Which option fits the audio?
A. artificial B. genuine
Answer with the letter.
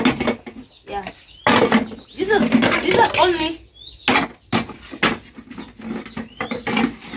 B